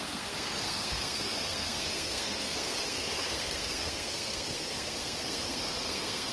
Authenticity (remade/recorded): remade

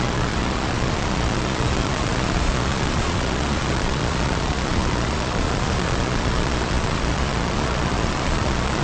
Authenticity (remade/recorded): remade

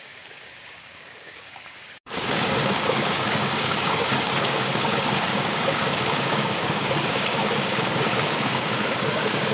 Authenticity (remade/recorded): remade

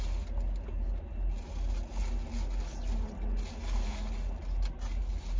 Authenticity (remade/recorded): recorded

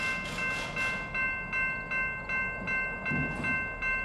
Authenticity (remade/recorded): recorded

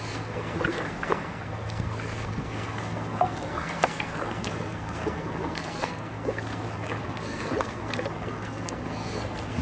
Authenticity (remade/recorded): remade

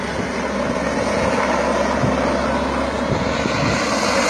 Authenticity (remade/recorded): recorded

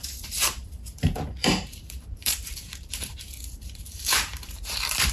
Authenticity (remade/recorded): remade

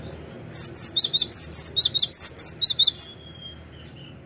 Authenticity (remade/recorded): recorded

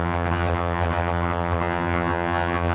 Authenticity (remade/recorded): remade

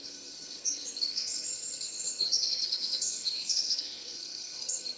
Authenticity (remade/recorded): remade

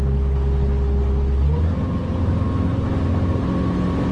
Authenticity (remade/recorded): recorded